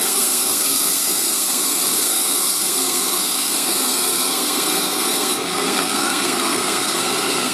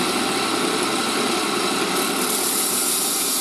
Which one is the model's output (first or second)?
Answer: first